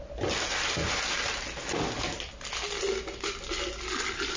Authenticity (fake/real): real